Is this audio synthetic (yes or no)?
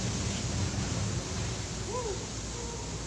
no